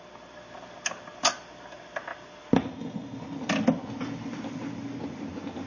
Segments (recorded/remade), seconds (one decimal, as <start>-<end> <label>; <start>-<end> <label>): 0.0-5.7 recorded